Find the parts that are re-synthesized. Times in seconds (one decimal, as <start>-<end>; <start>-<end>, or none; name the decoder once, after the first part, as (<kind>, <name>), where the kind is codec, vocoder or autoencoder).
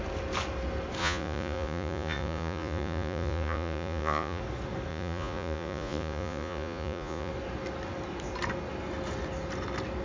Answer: 1.0-4.4 (vocoder, Vocos); 4.9-7.3